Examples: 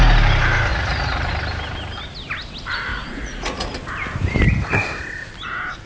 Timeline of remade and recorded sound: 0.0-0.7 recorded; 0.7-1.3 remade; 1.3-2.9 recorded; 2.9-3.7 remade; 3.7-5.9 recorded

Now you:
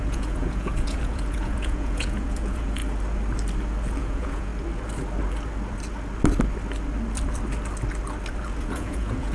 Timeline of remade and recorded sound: 0.0-2.8 remade; 2.8-4.0 recorded; 4.0-4.5 remade; 4.5-8.6 recorded; 8.6-9.3 remade

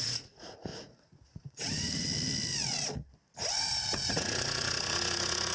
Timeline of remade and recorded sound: 0.0-2.1 remade; 2.1-3.5 recorded; 3.5-5.5 remade

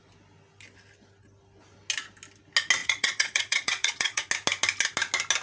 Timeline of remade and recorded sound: 0.0-2.8 recorded; 2.8-4.2 remade; 4.2-5.4 recorded

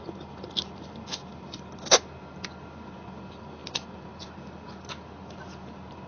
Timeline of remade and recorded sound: 0.0-6.1 recorded